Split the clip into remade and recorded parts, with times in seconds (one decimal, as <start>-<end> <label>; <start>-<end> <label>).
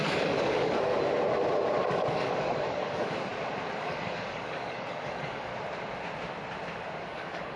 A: 0.0-0.9 remade; 0.9-2.1 recorded; 2.1-3.3 remade; 3.3-3.8 recorded; 3.8-5.5 remade; 5.5-7.0 recorded; 7.0-7.6 remade